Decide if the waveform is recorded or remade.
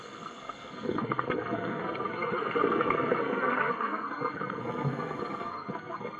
remade